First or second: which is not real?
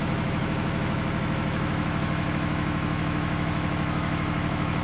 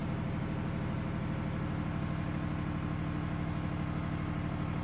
first